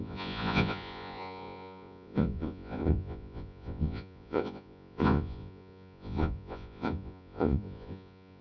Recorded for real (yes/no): no